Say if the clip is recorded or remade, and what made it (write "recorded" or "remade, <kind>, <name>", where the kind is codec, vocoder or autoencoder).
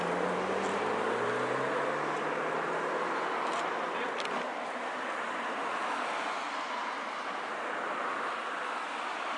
recorded